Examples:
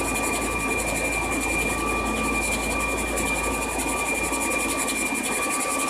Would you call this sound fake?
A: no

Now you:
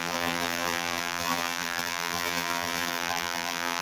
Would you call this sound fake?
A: yes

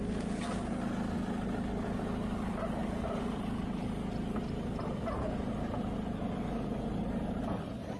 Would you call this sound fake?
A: no